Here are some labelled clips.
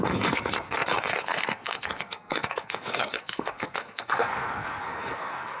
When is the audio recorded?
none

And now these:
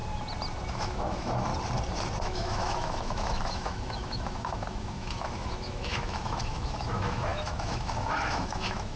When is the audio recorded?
0.0-0.7; 1.5-2.2

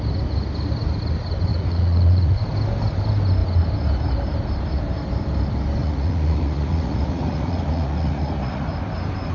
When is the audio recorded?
0.0-1.5; 2.4-5.8; 8.7-9.3

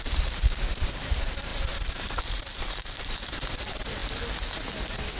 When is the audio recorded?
4.0-5.2

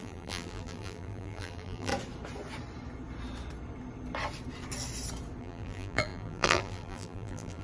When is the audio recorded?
1.9-5.4

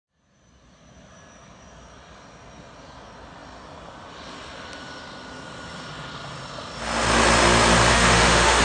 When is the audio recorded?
0.0-7.9

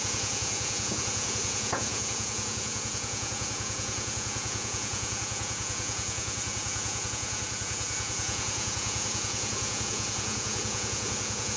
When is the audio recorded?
none